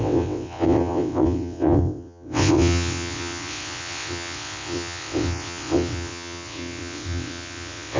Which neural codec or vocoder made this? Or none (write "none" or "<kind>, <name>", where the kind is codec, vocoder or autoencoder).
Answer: vocoder, WaveNeXt